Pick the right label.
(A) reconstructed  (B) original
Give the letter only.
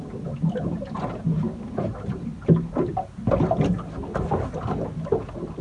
B